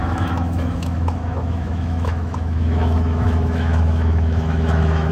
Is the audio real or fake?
fake